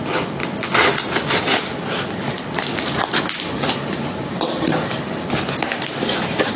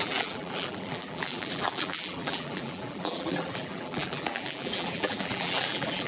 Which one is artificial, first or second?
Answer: second